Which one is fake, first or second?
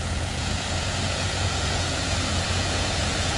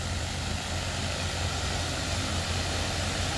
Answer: first